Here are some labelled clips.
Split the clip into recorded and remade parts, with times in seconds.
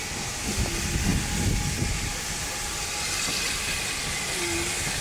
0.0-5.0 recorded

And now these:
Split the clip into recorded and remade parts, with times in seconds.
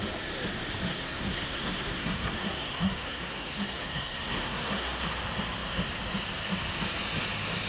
0.0-0.9 recorded; 0.9-5.0 remade; 5.0-7.7 recorded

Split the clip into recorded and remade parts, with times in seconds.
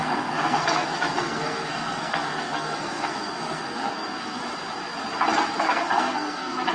0.0-4.4 remade; 4.4-5.6 recorded; 5.6-6.7 remade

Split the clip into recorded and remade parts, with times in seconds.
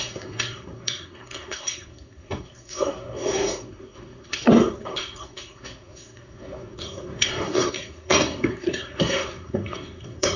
0.0-10.4 remade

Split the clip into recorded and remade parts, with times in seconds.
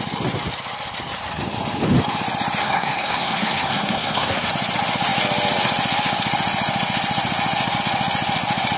0.0-2.6 recorded; 2.6-4.5 remade; 4.5-8.8 recorded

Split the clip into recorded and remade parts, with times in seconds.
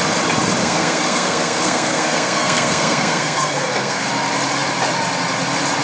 0.0-0.6 recorded; 0.6-4.1 remade; 4.1-5.8 recorded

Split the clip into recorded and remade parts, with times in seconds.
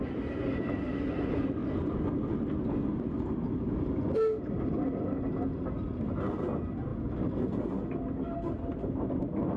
0.0-9.6 recorded